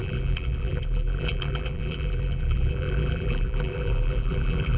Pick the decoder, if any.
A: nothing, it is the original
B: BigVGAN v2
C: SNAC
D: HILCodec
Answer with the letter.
B